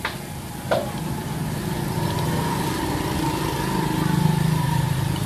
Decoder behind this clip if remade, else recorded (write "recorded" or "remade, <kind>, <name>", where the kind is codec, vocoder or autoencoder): recorded